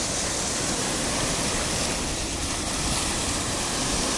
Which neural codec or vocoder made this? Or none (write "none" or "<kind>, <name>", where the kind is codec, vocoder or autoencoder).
none